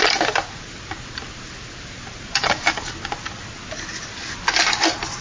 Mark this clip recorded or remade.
recorded